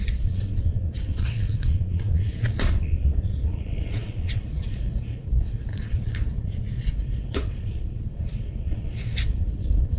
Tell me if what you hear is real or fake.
fake